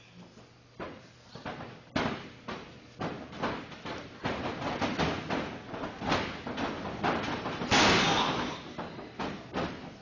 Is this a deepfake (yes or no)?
no